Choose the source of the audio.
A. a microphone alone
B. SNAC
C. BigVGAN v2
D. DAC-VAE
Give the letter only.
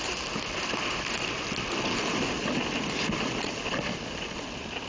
A